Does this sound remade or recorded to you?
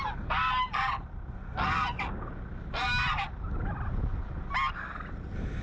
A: recorded